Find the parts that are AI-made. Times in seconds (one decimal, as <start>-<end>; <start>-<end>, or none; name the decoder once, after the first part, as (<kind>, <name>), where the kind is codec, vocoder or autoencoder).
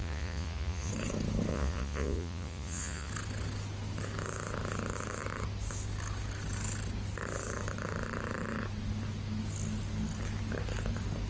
0.0-0.9 (vocoder, Vocos); 1.5-3.1